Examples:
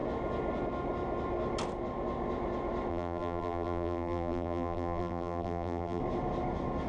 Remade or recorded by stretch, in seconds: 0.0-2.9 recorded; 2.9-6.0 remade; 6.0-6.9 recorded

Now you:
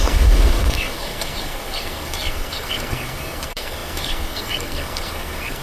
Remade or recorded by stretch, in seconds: 0.0-5.6 remade